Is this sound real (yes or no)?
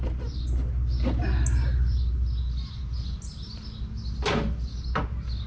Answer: yes